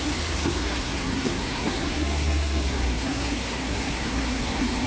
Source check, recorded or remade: remade